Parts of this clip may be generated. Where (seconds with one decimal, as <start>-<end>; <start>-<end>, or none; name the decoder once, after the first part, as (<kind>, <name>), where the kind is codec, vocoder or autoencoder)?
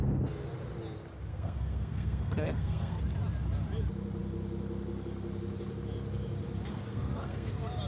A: 1.3-3.0 (codec, SNAC); 6.7-7.5